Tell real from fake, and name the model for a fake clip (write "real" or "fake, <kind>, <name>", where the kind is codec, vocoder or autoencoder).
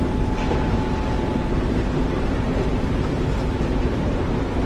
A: fake, vocoder, BigVGAN v2